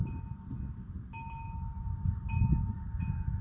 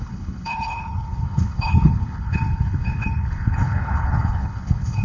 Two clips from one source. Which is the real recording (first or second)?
first